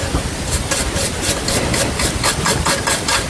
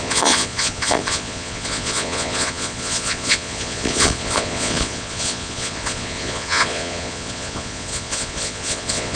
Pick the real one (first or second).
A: first